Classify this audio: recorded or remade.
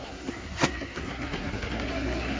remade